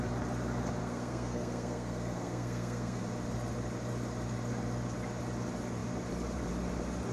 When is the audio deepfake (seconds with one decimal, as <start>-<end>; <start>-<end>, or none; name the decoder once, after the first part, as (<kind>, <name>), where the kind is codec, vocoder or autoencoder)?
0.8-3.0 (codec, SNAC)